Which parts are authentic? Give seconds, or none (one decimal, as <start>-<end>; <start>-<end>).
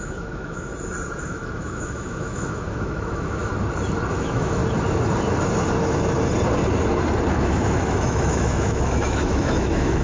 0.7-1.2; 3.5-4.1; 4.6-7.3